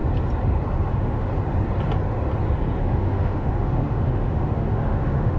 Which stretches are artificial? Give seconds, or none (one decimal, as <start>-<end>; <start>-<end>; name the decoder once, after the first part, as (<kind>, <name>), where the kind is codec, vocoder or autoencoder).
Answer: 0.9-1.3 (autoencoder, DAC-VAE); 2.8-5.4